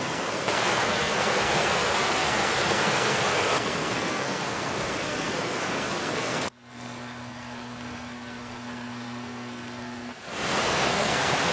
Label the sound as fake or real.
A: fake